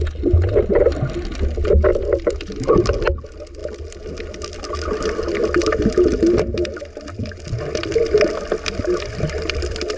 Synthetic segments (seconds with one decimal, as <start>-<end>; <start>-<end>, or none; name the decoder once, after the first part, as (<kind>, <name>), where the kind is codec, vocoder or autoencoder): none